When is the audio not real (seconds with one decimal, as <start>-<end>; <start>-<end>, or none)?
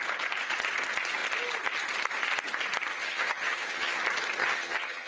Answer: 2.9-4.0; 4.4-5.1